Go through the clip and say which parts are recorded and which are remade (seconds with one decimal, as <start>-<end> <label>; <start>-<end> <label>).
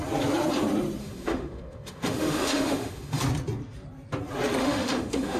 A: 0.0-1.0 recorded; 1.0-3.2 remade; 3.2-4.6 recorded; 4.6-5.4 remade